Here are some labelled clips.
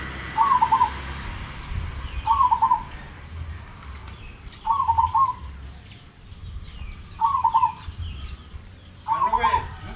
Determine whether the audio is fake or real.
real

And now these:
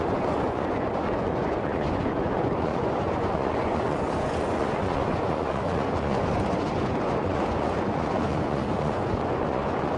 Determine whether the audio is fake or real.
fake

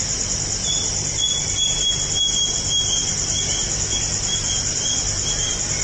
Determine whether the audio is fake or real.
real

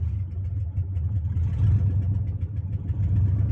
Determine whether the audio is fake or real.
real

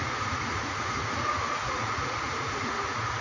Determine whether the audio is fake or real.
fake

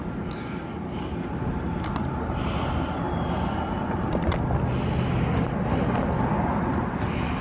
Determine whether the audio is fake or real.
real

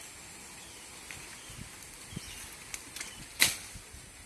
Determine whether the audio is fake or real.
real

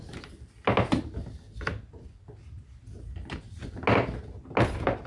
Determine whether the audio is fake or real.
real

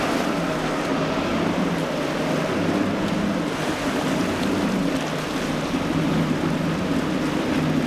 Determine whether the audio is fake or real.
real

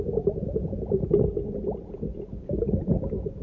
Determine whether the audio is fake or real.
real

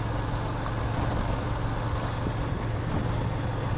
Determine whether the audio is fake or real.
real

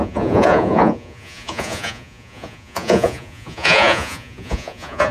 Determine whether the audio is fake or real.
fake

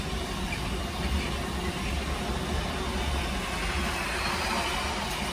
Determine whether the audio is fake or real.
real